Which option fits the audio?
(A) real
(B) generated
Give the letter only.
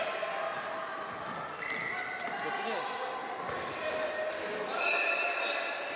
A